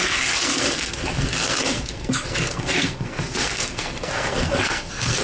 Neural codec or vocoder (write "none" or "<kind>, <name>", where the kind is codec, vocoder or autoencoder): codec, SNAC